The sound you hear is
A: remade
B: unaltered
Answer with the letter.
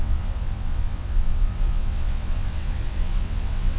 A